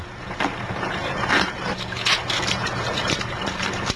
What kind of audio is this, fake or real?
fake